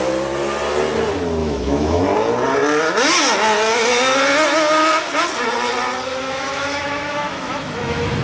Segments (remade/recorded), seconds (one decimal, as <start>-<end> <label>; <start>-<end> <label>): 0.0-1.4 recorded; 1.4-2.0 remade; 2.0-6.1 recorded; 6.1-8.2 remade

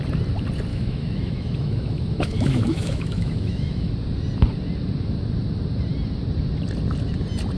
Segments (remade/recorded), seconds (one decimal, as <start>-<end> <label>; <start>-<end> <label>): 0.0-0.7 recorded; 0.7-3.9 remade; 3.9-7.6 recorded